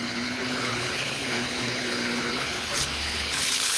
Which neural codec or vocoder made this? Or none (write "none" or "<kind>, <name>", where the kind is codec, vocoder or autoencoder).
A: codec, HILCodec